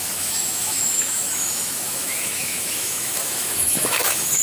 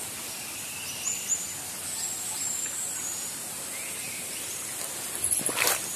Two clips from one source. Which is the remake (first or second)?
first